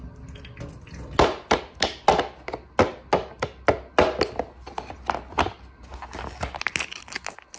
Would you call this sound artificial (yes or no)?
no